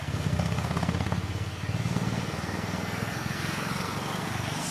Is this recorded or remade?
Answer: remade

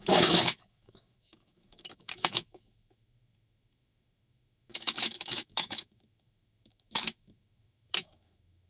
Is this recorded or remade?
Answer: remade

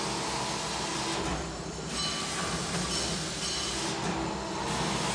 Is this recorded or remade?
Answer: recorded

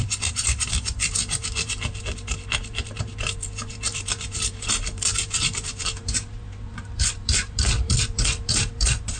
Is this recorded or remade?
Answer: remade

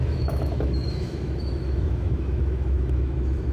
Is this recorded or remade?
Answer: remade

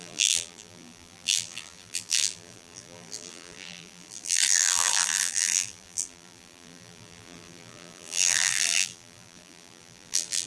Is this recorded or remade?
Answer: remade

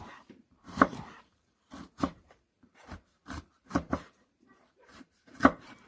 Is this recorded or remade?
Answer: remade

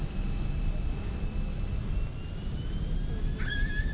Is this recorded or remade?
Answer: recorded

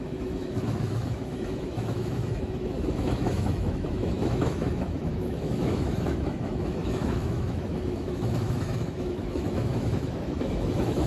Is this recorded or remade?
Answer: remade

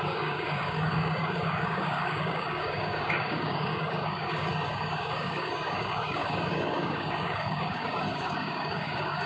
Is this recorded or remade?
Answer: remade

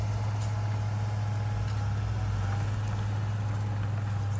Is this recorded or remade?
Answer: recorded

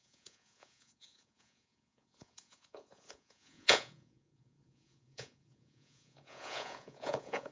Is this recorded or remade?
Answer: remade